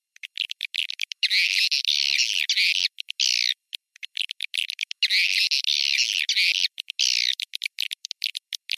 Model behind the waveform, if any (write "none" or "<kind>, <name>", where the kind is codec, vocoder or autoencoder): none